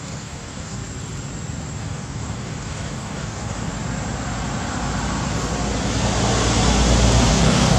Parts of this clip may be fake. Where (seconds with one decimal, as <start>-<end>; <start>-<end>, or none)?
0.0-0.8; 1.8-3.7; 7.3-7.8